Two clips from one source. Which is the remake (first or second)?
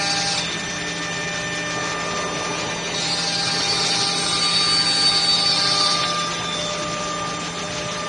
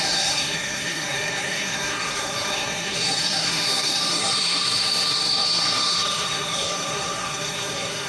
second